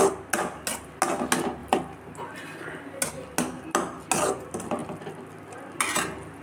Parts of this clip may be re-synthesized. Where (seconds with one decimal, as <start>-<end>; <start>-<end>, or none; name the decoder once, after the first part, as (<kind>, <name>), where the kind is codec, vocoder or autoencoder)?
1.6-2.8 (vocoder, BigVGAN v2)